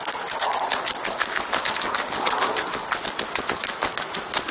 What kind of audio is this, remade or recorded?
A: recorded